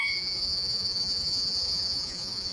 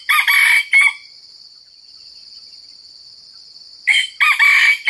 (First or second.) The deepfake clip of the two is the first